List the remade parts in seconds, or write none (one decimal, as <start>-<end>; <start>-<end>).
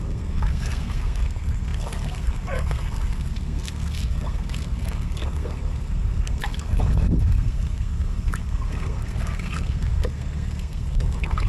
0.0-11.5